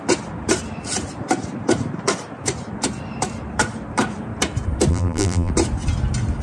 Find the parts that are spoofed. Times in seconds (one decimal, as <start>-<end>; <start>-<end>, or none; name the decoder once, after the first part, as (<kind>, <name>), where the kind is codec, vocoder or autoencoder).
4.9-5.5 (vocoder, BigVGAN v2)